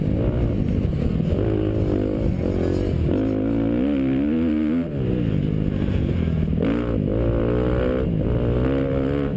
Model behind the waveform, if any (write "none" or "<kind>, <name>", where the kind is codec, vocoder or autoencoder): none